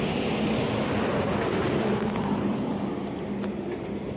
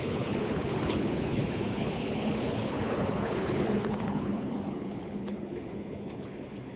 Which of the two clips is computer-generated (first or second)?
second